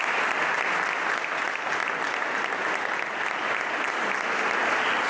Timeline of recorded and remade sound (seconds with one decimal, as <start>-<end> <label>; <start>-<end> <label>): 0.0-5.1 recorded